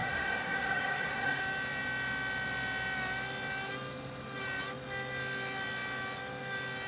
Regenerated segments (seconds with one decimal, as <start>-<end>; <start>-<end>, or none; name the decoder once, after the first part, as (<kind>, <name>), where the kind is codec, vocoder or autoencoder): 0.0-1.4 (codec, SNAC)

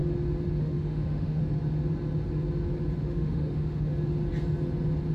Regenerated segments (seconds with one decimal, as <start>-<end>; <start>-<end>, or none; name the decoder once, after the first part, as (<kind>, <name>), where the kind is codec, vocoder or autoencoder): 0.6-1.4 (autoencoder, DAC-VAE); 3.0-3.9

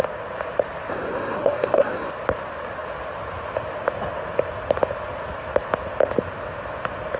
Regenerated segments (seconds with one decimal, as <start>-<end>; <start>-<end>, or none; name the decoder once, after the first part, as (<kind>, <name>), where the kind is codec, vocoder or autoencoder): 0.9-2.1 (codec, SNAC)